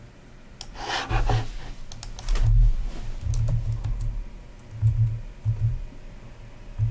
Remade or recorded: recorded